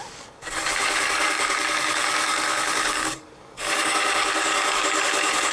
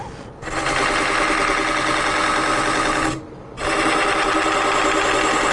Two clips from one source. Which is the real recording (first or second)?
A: second